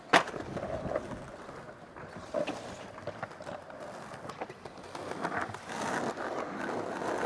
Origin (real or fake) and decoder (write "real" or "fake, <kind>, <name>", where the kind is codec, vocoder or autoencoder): real